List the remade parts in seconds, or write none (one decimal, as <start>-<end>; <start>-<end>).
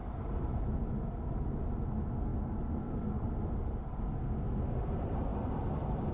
0.0-0.7